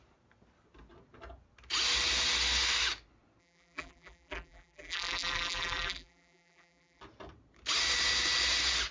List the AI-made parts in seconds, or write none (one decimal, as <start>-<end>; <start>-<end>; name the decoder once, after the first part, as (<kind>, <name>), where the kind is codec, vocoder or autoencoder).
3.4-7.0 (vocoder, BigVGAN v2)